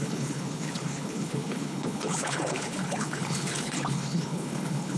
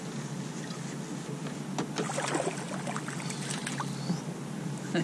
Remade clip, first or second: first